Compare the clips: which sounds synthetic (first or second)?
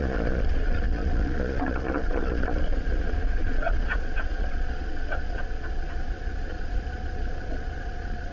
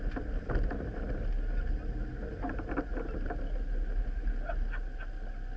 first